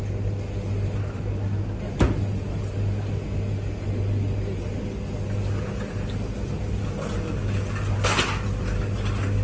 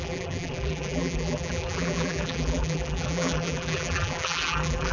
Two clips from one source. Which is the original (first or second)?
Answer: first